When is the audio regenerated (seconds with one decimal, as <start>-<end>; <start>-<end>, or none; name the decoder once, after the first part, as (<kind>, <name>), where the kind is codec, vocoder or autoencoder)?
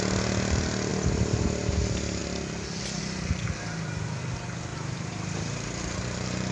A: 4.7-6.5 (vocoder, BigVGAN v2)